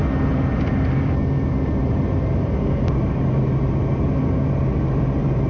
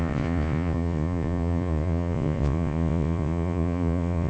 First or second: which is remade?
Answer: second